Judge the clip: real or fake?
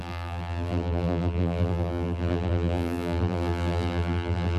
fake